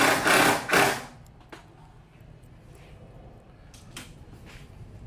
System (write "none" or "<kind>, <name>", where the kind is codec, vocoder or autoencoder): none